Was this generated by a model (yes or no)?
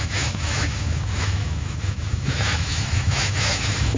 yes